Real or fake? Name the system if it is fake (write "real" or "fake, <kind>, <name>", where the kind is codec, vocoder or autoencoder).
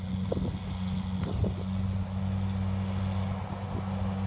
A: real